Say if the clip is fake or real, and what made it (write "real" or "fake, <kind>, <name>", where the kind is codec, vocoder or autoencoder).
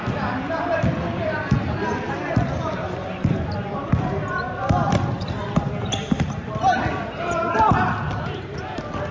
real